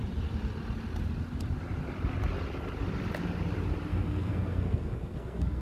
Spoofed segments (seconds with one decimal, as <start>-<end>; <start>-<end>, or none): 3.9-5.6